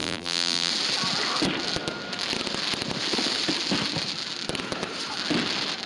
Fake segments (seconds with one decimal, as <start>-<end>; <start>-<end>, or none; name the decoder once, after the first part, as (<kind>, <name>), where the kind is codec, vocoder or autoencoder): 0.0-0.7 (vocoder, BigVGAN v2)